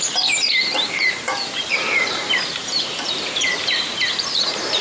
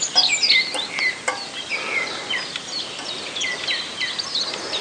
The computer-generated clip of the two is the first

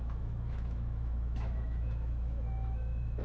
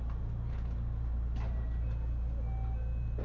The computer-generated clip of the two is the first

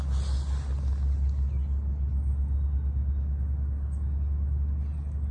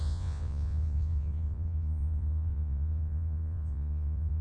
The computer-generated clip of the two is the second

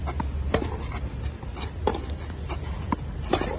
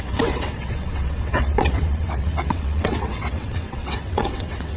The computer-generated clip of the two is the second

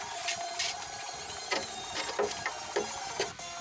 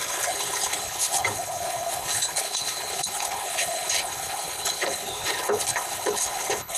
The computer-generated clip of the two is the second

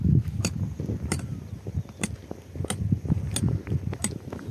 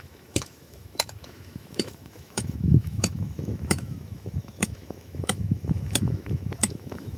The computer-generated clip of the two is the second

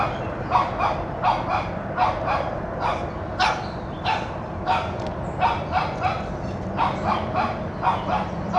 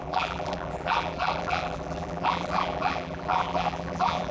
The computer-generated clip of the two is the second